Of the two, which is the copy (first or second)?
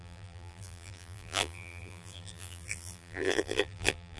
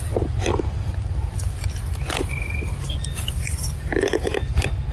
first